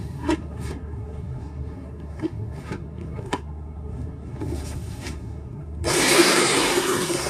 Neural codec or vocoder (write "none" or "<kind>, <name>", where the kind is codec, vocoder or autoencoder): codec, SNAC